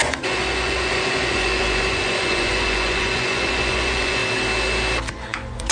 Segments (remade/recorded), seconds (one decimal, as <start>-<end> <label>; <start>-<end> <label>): 0.0-4.2 remade; 4.2-5.1 recorded; 5.1-5.7 remade